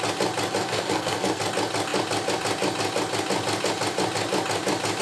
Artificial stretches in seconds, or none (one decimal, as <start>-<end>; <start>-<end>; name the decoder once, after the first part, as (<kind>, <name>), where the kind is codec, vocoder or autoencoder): 0.6-1.4 (codec, SNAC)